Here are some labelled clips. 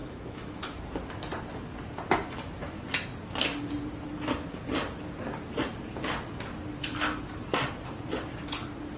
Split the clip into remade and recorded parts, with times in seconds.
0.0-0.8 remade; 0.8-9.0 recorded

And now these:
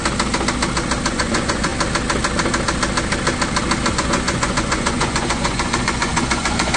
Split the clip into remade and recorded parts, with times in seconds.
0.0-1.1 recorded; 1.1-1.7 remade; 1.7-3.9 recorded; 3.9-6.8 remade

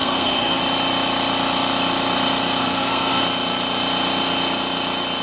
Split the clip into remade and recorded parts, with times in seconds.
0.0-0.6 remade; 0.6-2.6 recorded; 2.6-3.2 remade; 3.2-5.2 recorded

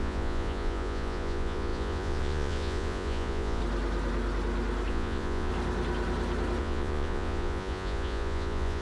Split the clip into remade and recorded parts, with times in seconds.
0.0-3.6 remade; 3.6-4.9 recorded; 4.9-5.5 remade; 5.5-6.6 recorded; 6.6-8.8 remade

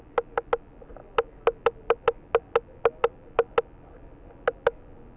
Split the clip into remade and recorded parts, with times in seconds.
0.0-5.2 recorded

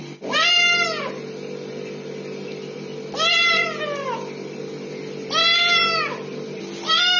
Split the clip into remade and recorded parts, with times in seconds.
0.0-7.2 recorded